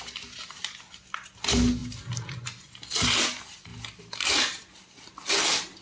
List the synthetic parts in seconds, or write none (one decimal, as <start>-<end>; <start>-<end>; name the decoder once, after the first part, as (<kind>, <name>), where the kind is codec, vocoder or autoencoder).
none